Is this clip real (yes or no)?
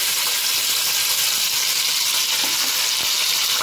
yes